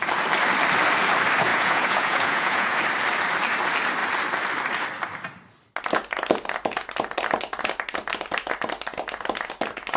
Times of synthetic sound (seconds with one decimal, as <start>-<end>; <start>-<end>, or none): 1.5-2.8